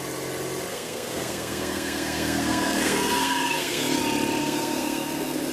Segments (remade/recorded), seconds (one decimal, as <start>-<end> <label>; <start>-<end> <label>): 0.0-0.7 recorded; 0.7-4.0 remade; 4.0-4.4 recorded; 4.4-5.5 remade